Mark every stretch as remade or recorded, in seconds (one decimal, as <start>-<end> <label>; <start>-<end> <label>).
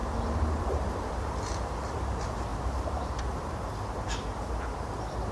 0.0-5.3 remade